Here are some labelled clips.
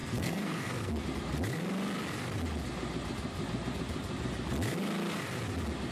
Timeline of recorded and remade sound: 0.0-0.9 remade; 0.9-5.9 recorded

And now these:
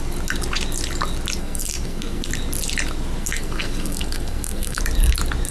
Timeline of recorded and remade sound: 0.0-1.4 recorded; 1.4-2.3 remade; 2.3-3.2 recorded; 3.2-4.8 remade; 4.8-5.5 recorded

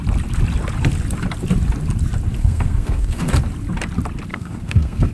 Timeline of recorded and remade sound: 0.0-2.4 recorded; 2.4-3.3 remade; 3.3-4.3 recorded; 4.3-5.1 remade

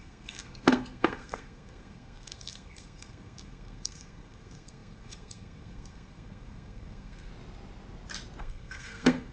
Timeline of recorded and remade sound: 0.0-7.3 remade; 7.3-8.4 recorded; 8.4-9.3 remade

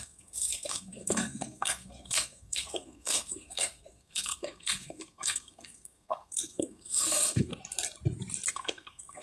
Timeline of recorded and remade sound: 0.0-7.5 remade; 7.5-8.5 recorded; 8.5-9.2 remade